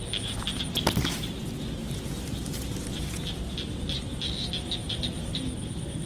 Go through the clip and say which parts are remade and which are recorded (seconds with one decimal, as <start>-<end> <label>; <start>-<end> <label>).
0.0-1.8 recorded; 1.8-3.1 remade; 3.1-4.8 recorded; 4.8-6.1 remade